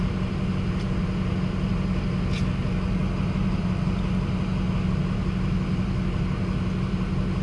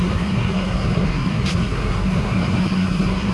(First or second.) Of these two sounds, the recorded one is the first